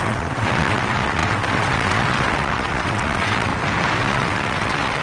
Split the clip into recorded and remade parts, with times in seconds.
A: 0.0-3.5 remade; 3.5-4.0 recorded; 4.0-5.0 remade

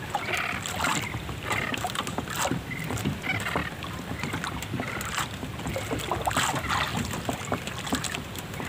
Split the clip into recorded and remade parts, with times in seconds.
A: 0.0-6.9 recorded; 6.9-7.8 remade; 7.8-8.7 recorded